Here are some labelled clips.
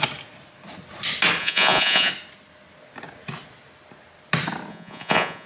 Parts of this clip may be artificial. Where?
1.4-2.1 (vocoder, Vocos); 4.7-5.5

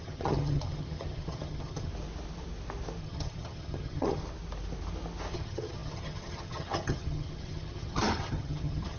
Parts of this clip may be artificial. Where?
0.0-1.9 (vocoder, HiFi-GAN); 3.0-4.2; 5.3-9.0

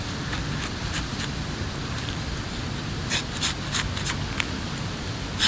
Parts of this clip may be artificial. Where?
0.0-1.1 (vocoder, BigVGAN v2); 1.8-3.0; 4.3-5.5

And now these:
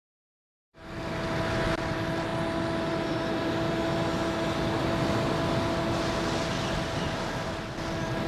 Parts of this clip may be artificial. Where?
none